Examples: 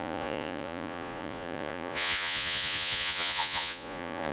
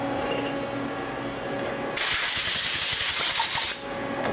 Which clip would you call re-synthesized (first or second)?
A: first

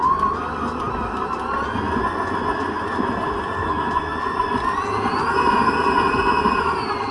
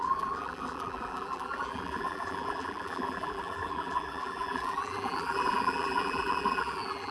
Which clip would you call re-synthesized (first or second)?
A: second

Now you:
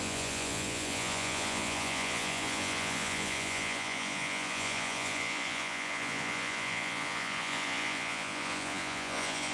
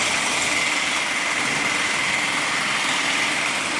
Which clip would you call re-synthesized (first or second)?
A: first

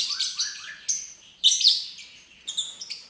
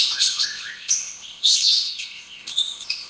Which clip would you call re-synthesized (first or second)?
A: second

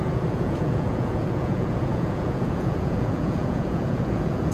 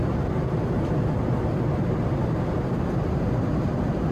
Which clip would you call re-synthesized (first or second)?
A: first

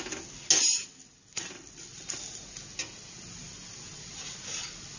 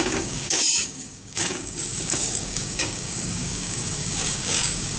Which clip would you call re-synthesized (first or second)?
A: second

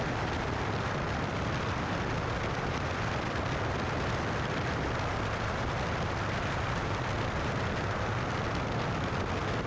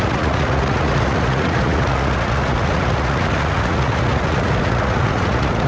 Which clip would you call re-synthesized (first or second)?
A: second